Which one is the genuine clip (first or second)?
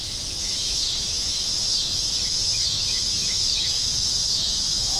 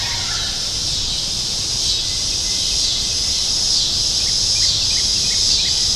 second